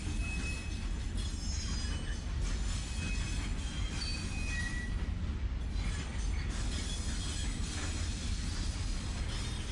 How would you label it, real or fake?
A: real